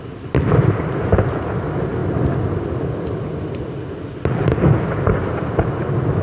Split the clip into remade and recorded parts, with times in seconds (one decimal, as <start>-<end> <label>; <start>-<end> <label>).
0.0-6.2 recorded